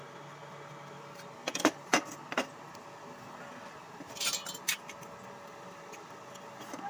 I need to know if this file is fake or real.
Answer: real